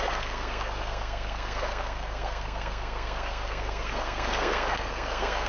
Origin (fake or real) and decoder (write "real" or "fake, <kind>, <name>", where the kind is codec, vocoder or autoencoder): fake, codec, SNAC